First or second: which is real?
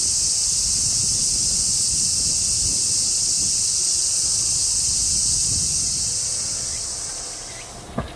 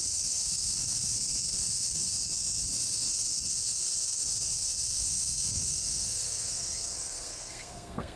first